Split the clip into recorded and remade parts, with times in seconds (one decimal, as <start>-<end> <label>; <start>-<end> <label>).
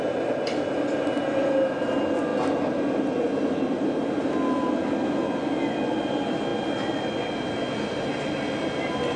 0.0-9.2 recorded